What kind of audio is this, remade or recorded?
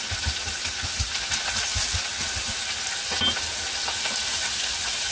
recorded